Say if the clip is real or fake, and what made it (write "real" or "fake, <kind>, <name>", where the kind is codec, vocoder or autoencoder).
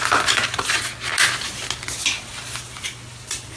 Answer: real